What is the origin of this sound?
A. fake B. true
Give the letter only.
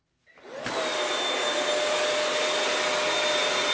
B